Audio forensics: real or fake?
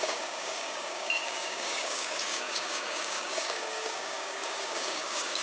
fake